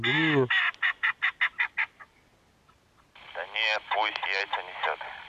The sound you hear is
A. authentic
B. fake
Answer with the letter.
A